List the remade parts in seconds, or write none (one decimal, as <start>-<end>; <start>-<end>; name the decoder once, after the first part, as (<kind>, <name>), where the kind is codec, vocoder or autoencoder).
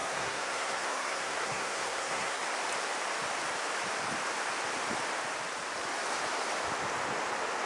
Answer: 0.0-2.4 (codec, SNAC)